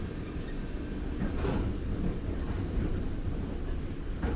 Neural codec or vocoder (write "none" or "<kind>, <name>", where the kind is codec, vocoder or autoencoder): vocoder, BigVGAN v2